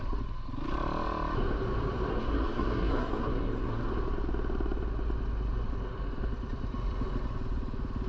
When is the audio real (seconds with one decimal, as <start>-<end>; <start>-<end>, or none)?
0.0-2.1; 3.9-8.1